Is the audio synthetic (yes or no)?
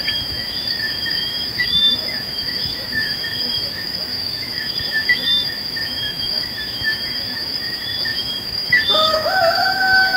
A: yes